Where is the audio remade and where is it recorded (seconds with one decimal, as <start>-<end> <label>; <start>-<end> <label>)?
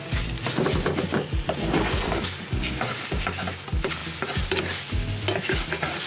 0.0-6.1 recorded